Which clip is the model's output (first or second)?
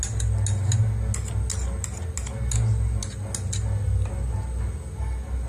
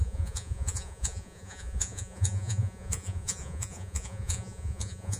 second